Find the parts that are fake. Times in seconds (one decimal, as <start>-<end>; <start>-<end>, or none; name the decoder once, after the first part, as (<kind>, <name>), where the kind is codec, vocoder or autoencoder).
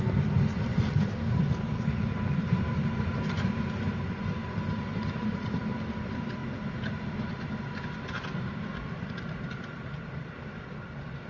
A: 0.0-6.4 (vocoder, BigVGAN v2); 9.8-11.3